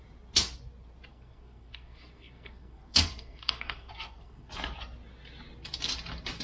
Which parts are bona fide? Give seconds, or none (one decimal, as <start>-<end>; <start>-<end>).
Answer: 0.0-1.1; 4.5-6.4